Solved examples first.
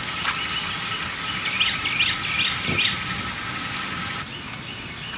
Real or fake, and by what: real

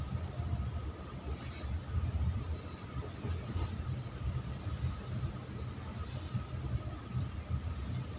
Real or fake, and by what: real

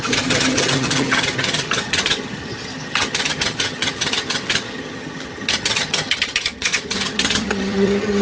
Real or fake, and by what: fake, vocoder, HiFi-GAN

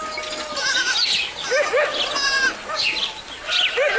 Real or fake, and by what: real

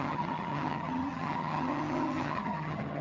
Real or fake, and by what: fake, vocoder, HiFi-GAN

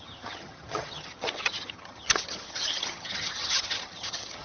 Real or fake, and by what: fake, vocoder, HiFi-GAN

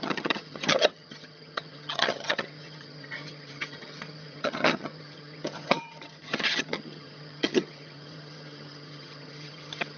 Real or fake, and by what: fake, vocoder, HiFi-GAN